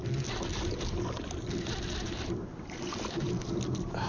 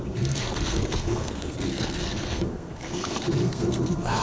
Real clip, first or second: first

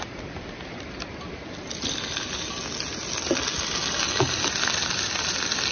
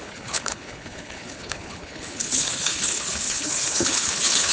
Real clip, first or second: first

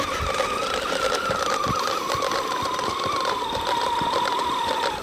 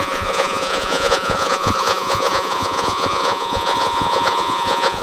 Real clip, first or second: first